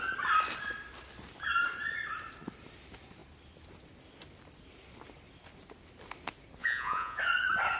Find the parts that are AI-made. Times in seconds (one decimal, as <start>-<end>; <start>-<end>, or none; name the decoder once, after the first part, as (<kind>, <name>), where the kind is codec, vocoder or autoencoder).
6.6-7.2 (vocoder, Vocos)